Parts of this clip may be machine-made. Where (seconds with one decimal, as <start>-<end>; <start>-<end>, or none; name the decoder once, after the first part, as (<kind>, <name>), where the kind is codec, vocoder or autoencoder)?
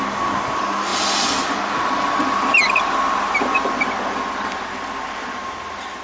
none